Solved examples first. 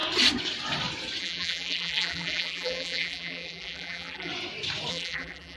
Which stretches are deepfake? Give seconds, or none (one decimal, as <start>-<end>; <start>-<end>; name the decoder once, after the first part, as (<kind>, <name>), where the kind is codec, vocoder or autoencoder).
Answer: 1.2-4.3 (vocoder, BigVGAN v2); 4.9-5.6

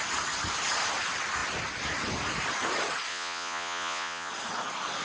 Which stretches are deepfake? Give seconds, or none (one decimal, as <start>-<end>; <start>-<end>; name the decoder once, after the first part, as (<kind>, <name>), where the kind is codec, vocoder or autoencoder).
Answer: 3.1-4.3 (vocoder, Vocos)

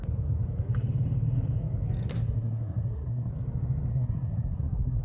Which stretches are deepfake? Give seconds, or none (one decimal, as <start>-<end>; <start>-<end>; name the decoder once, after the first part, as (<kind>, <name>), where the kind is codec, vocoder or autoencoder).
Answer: 2.1-3.3 (codec, SNAC); 3.9-5.0

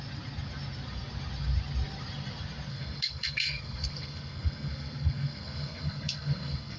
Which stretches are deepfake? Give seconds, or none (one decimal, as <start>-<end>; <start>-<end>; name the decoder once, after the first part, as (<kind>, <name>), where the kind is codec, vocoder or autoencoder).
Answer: 2.7-6.8 (codec, SNAC)

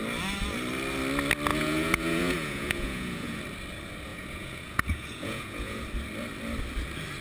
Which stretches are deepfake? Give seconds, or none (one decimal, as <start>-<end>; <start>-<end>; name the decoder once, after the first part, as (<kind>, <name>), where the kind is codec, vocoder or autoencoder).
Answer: 1.5-3.4 (vocoder, Vocos); 4.1-5.8

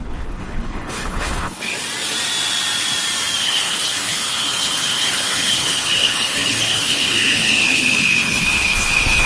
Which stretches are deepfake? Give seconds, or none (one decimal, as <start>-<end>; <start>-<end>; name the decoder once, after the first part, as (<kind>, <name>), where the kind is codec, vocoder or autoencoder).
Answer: 0.0-1.7 (codec, HILCodec); 3.4-9.3